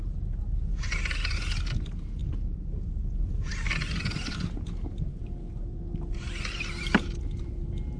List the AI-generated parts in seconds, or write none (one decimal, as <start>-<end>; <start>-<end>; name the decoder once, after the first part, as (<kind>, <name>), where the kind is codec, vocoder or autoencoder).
none